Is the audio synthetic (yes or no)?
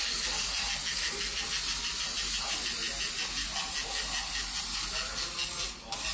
no